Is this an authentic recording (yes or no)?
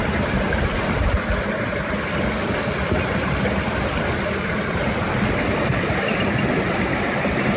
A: yes